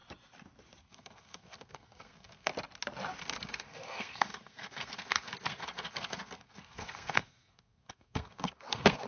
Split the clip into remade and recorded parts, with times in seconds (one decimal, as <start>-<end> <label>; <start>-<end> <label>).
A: 0.0-0.8 recorded; 0.8-2.5 remade; 2.5-3.2 recorded; 3.2-9.1 remade

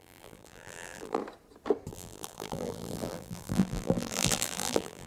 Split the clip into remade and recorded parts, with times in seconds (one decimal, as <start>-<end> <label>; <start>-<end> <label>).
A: 0.0-1.2 remade; 1.2-1.9 recorded; 1.9-5.1 remade

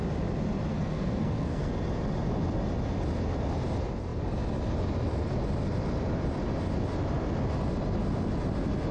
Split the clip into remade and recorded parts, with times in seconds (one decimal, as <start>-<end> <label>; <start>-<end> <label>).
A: 0.0-0.7 recorded; 0.7-1.7 remade; 1.7-8.9 recorded

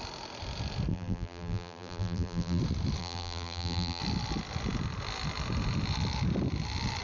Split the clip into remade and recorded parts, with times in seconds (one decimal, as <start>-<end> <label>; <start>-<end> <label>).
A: 0.0-0.9 recorded; 0.9-2.6 remade; 2.6-3.0 recorded; 3.0-4.0 remade; 4.0-7.0 recorded

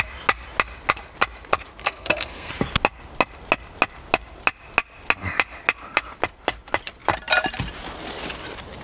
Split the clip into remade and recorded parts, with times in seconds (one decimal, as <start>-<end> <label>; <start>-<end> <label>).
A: 0.0-1.8 recorded; 1.8-2.5 remade; 2.5-8.8 recorded